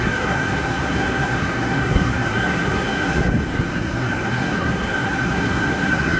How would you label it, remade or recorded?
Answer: remade